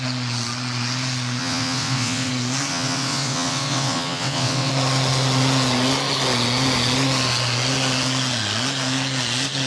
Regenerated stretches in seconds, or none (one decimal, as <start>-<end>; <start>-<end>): 1.4-2.3; 2.7-4.7